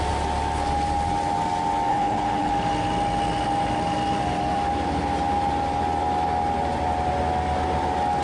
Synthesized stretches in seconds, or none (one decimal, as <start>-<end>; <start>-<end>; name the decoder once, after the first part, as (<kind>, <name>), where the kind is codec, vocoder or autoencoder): 1.9-2.5 (codec, HILCodec)